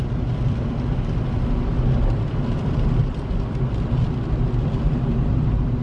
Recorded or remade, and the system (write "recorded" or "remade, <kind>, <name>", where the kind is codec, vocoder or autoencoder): remade, vocoder, BigVGAN v2